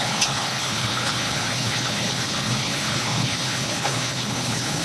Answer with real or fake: fake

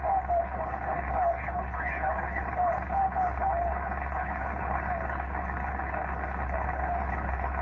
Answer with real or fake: fake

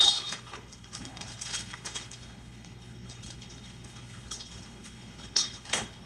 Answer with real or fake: fake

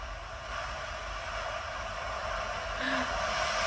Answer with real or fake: real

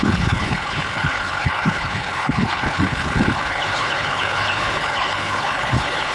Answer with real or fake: fake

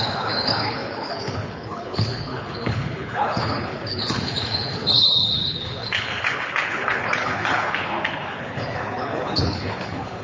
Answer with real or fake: fake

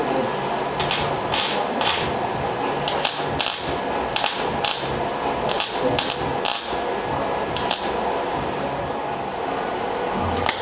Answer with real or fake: real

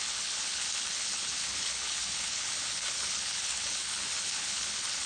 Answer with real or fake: fake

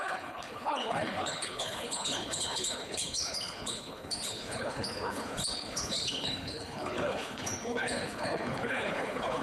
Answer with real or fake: fake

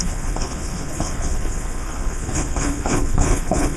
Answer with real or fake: fake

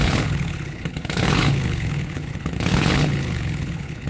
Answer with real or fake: fake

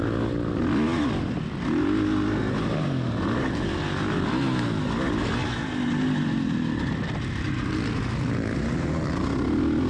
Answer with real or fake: real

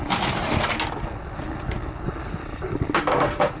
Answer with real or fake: real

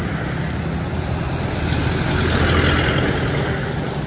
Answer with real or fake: real